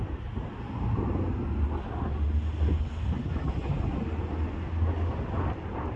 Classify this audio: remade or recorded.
recorded